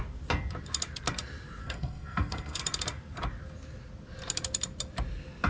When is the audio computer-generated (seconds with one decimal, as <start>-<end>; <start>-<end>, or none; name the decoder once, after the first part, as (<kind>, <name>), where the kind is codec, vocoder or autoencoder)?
1.6-2.6 (codec, SNAC)